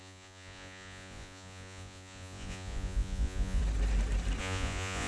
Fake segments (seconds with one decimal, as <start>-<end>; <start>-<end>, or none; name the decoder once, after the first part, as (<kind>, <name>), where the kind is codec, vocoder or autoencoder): 0.0-3.6 (vocoder, Vocos); 4.4-5.1